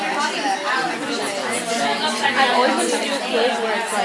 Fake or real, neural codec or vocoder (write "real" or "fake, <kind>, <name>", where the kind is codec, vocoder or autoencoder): real